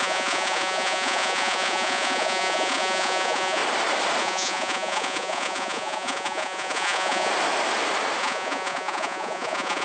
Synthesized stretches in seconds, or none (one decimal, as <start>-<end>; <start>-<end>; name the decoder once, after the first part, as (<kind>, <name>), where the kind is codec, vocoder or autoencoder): 0.0-3.6 (vocoder, Vocos); 4.2-7.3; 8.2-9.8